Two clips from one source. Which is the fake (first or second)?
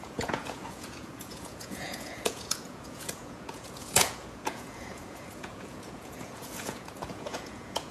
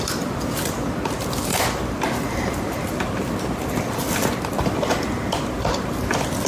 first